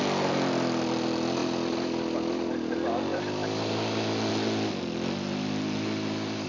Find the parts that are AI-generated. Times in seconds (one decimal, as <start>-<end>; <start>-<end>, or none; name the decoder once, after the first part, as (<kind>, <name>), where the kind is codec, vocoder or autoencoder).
none